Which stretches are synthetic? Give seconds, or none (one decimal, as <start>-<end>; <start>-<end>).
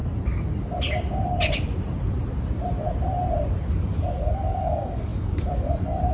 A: 3.7-6.1